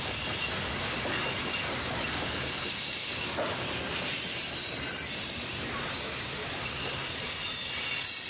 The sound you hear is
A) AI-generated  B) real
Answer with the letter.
B